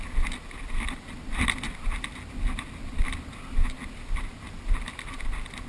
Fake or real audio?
real